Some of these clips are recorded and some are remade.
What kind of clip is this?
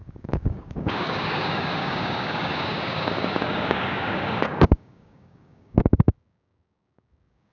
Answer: remade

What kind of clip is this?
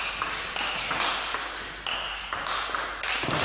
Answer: recorded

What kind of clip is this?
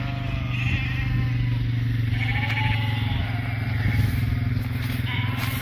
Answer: recorded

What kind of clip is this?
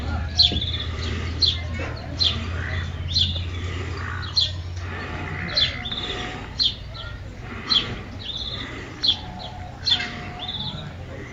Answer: recorded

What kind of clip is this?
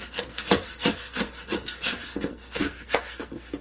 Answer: remade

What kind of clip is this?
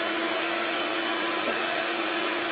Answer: remade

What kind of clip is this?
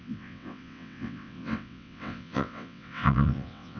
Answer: remade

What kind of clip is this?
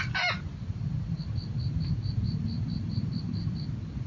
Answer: recorded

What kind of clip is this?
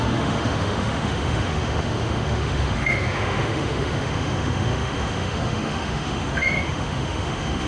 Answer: remade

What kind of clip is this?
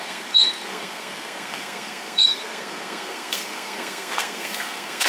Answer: remade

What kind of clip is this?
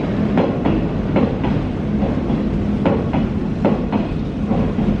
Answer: recorded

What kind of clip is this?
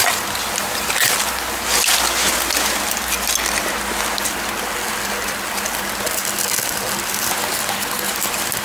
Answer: recorded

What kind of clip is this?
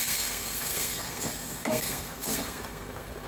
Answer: remade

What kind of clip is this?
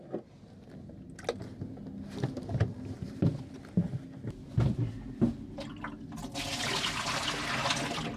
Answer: recorded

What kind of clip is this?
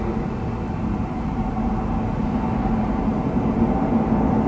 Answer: recorded